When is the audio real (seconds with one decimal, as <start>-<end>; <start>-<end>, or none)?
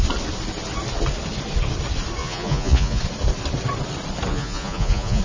0.0-2.2; 3.0-4.3